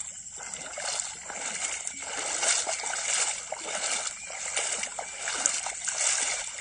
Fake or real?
real